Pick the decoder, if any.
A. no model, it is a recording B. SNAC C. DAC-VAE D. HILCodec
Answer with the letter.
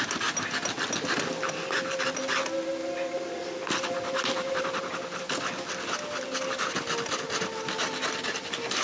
A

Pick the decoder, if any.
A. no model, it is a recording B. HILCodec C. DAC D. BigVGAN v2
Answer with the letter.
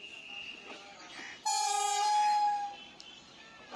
A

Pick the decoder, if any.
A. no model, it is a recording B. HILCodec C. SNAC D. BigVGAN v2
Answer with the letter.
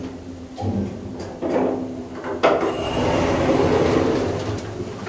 A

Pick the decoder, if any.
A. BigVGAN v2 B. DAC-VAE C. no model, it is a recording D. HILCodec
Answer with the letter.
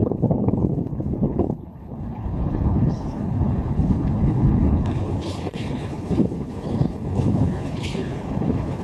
D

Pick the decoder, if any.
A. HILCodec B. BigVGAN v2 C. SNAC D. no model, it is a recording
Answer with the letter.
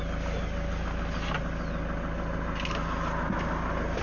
D